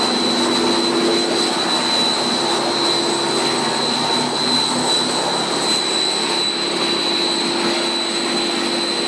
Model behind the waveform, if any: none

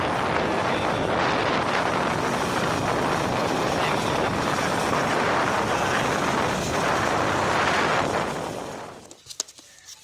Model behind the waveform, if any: none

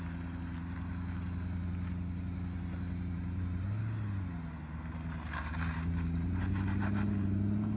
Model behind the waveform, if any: none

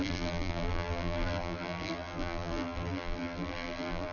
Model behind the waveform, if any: vocoder, BigVGAN v2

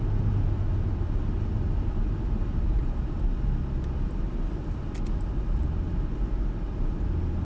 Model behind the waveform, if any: none